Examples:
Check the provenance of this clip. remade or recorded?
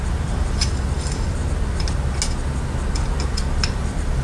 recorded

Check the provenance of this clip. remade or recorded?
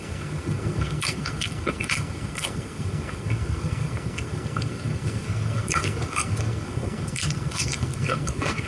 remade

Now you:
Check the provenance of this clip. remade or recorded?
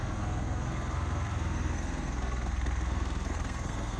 remade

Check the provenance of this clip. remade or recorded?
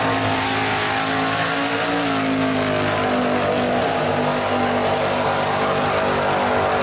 recorded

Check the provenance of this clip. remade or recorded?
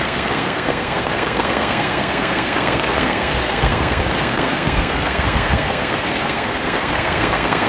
remade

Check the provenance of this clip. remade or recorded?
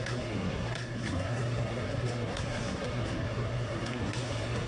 remade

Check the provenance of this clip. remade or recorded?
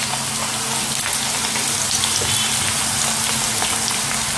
recorded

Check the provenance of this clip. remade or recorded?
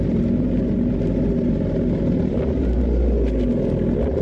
recorded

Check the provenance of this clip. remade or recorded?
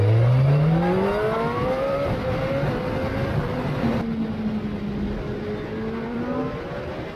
recorded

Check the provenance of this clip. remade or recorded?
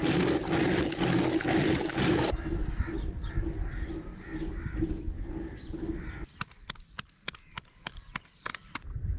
recorded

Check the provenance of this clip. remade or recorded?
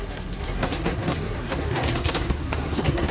remade